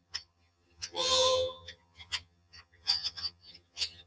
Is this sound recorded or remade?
remade